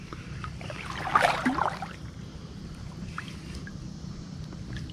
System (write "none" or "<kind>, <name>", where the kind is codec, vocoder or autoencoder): vocoder, BigVGAN v2